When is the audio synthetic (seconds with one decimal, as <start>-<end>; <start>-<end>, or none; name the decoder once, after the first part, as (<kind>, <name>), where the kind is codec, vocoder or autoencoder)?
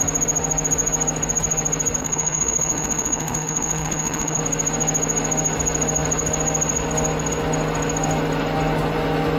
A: 2.0-4.4 (autoencoder, DAC-VAE)